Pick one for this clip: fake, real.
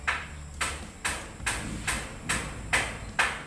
real